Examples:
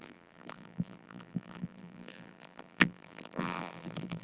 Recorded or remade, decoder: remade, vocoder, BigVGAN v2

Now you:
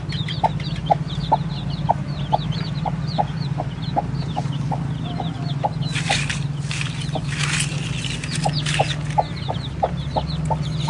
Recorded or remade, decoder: recorded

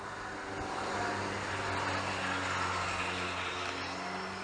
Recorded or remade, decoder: recorded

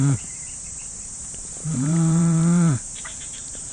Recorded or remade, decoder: remade, vocoder, BigVGAN v2